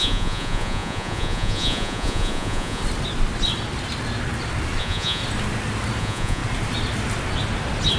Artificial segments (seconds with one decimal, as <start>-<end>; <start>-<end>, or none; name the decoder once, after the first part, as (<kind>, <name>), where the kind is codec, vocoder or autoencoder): 0.0-2.8 (vocoder, Vocos); 4.8-5.2; 6.0-6.4